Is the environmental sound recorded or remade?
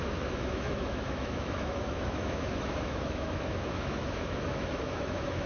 remade